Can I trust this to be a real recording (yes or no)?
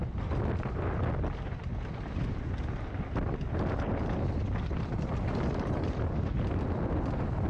yes